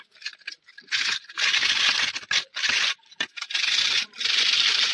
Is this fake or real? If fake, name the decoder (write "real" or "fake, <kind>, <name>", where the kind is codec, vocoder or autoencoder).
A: real